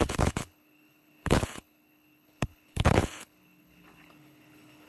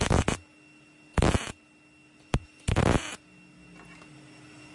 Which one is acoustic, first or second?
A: second